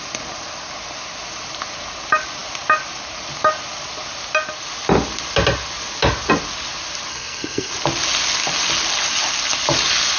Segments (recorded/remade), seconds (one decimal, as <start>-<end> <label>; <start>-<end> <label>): 0.0-7.1 recorded; 7.1-7.7 remade; 7.7-10.2 recorded